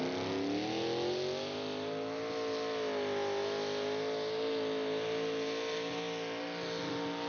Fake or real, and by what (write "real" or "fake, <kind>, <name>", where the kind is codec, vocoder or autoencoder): real